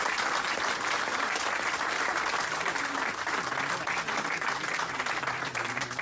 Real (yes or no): yes